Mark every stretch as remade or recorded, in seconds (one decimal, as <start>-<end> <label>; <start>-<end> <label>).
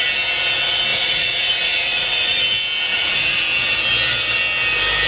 0.0-0.9 recorded; 0.9-2.4 remade; 2.4-2.9 recorded; 2.9-3.4 remade; 3.4-5.1 recorded